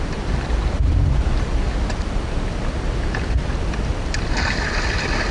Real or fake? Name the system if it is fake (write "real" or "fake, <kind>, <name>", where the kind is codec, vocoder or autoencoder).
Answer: real